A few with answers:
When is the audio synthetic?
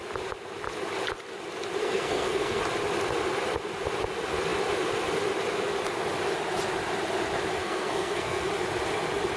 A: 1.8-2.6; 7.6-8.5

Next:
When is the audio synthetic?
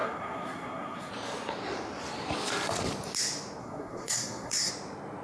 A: 0.0-1.1; 3.6-4.7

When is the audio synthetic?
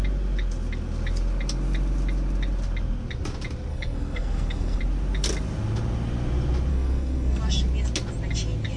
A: 3.7-4.8; 6.7-7.4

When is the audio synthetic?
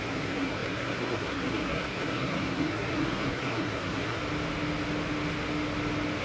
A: 0.0-4.2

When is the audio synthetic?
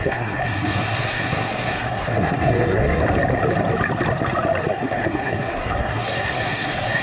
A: 0.0-3.0; 4.7-7.0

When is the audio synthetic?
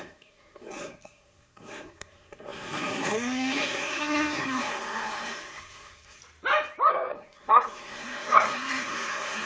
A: 0.0-6.2; 6.9-9.5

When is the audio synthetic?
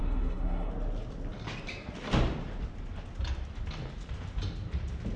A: 0.0-0.7